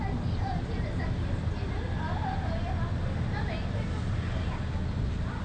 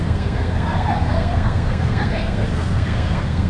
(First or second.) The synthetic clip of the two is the second